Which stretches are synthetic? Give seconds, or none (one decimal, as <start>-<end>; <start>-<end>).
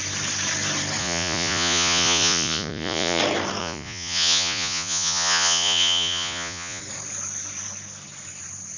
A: 1.0-3.2; 3.6-6.8